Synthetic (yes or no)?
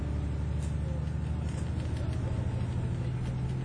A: no